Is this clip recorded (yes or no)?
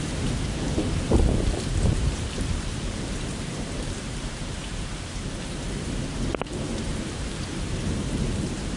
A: no